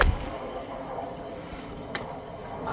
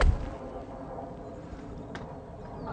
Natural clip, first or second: second